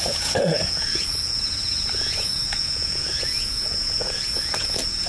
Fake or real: fake